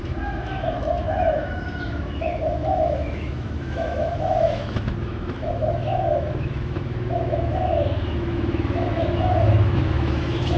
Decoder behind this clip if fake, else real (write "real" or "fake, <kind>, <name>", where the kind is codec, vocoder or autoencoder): fake, autoencoder, DAC-VAE